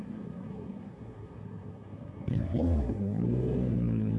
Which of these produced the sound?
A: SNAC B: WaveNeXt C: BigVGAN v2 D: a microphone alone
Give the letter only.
A